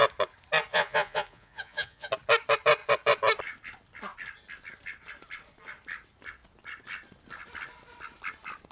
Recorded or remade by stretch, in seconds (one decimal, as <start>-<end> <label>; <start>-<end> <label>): 0.0-0.7 recorded; 0.7-2.1 remade; 2.1-8.7 recorded